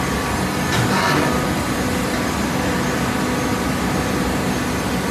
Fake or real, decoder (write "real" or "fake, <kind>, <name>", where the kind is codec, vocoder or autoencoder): real